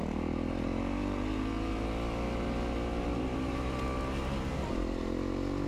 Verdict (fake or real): real